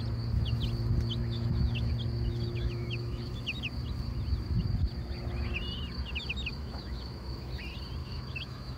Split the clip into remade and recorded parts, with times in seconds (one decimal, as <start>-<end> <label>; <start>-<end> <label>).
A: 0.0-1.2 recorded; 1.2-1.9 remade; 1.9-2.3 recorded; 2.3-3.3 remade; 3.3-6.5 recorded; 6.5-7.6 remade; 7.6-8.0 recorded; 8.0-8.8 remade